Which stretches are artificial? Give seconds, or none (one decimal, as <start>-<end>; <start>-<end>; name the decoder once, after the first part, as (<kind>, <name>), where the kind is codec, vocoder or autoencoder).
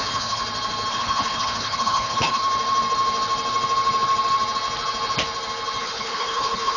0.0-0.4 (codec, HILCodec); 0.9-2.4; 5.8-6.8